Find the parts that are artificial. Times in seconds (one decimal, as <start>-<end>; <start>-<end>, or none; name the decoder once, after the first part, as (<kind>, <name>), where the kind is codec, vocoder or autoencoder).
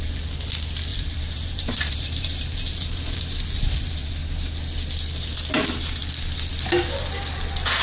0.9-4.1 (vocoder, BigVGAN v2)